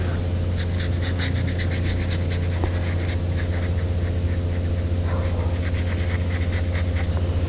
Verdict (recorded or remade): recorded